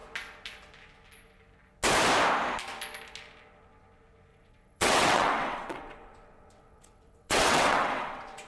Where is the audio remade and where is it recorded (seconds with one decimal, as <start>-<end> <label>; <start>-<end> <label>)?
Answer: 0.0-4.3 recorded; 4.3-8.5 remade

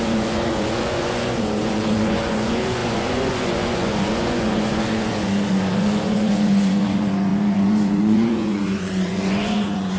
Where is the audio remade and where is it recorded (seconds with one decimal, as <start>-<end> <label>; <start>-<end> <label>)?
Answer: 0.0-10.0 remade

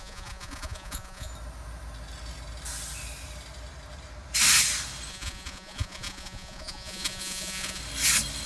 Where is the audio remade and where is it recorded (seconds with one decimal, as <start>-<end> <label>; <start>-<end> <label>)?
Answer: 0.0-1.3 remade; 1.3-5.1 recorded; 5.1-7.8 remade; 7.8-8.5 recorded

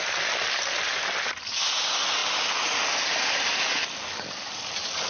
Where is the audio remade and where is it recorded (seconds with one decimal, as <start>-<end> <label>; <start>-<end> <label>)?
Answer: 0.0-5.1 recorded

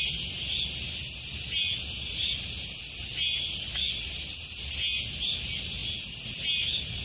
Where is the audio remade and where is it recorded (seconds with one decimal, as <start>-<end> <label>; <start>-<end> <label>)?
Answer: 0.0-7.0 recorded

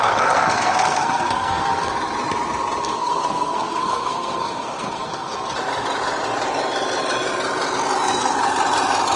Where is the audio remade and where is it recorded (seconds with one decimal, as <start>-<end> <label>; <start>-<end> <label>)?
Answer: 0.0-1.9 remade; 1.9-2.8 recorded; 2.8-5.3 remade; 5.3-9.2 recorded

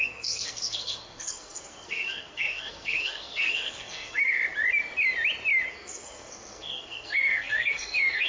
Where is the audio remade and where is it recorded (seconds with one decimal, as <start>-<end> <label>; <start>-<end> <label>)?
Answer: 0.0-4.4 remade; 4.4-5.7 recorded; 5.7-8.3 remade

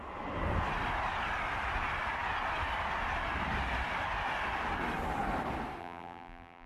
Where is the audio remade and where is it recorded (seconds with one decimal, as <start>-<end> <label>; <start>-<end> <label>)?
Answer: 0.0-5.8 recorded; 5.8-6.7 remade